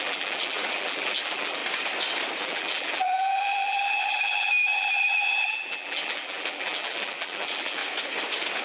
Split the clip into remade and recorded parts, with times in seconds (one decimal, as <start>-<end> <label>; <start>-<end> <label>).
0.0-1.6 remade; 1.6-2.4 recorded; 2.4-7.8 remade; 7.8-8.6 recorded